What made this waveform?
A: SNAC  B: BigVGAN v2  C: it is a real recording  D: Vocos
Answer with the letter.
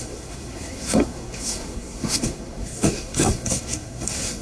A